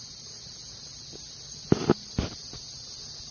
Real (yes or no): yes